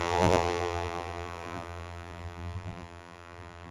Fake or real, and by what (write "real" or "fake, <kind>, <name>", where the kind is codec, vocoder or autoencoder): fake, vocoder, BigVGAN v2